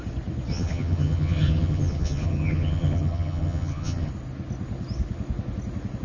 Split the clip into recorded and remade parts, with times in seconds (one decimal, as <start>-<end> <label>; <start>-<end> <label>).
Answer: 0.0-0.5 recorded; 0.5-4.1 remade; 4.1-6.0 recorded